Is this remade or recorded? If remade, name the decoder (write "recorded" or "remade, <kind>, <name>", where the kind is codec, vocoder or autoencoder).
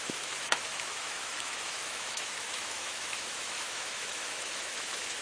remade, autoencoder, DAC-VAE